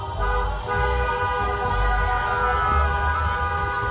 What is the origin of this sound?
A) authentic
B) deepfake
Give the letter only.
A